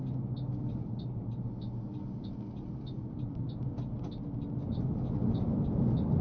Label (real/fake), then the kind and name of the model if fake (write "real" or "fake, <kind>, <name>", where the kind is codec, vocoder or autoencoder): real